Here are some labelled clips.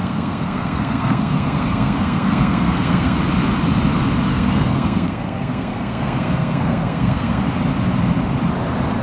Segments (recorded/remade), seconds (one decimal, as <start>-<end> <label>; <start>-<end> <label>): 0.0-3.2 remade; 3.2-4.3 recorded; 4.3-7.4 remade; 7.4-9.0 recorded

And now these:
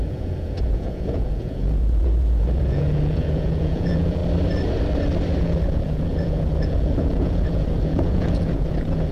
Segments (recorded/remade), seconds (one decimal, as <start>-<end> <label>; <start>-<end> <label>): 0.0-4.2 remade; 4.2-5.4 recorded; 5.4-9.1 remade

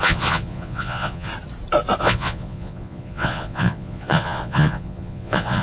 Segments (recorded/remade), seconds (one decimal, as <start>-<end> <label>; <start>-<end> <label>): 0.0-1.3 remade; 1.3-2.0 recorded; 2.0-5.6 remade